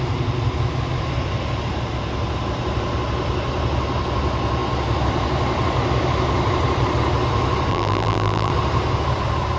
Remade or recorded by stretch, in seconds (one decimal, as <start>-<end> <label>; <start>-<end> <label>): 0.0-7.7 recorded; 7.7-8.5 remade; 8.5-9.6 recorded